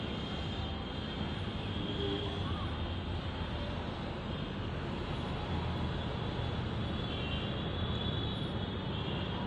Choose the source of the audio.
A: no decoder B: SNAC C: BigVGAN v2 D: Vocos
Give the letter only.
A